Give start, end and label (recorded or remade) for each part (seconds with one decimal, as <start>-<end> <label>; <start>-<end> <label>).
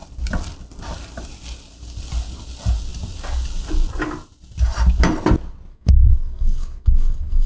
0.0-5.7 recorded; 5.7-7.5 remade